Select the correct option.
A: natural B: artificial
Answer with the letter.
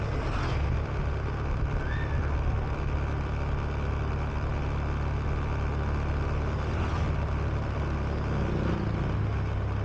A